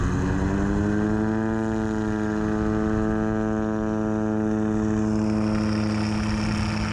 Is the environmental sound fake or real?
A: real